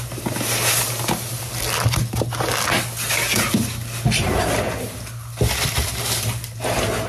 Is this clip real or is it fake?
real